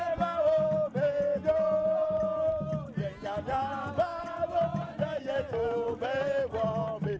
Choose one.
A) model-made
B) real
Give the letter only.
B